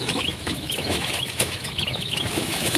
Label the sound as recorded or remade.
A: remade